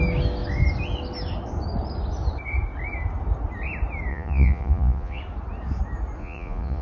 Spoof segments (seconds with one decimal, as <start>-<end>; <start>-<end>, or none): 4.1-5.2; 6.2-6.8